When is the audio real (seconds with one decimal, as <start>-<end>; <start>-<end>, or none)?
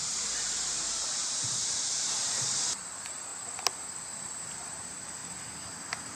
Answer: 3.3-4.5; 5.2-6.1